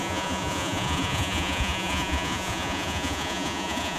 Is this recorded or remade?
remade